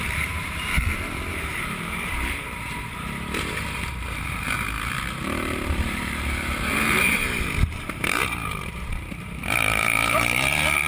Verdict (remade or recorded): remade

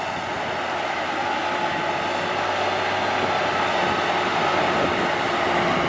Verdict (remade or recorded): recorded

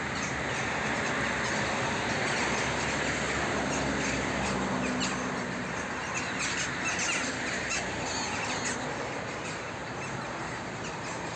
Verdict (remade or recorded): recorded